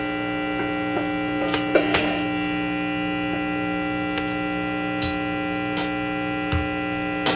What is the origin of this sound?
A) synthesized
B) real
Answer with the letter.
B